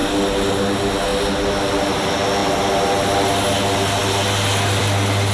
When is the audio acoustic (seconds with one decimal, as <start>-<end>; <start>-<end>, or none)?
0.0-5.3